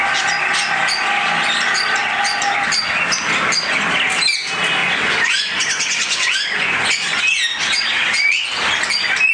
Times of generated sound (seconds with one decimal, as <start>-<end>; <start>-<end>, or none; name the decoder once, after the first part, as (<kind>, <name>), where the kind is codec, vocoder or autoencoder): 4.8-7.2 (vocoder, Vocos)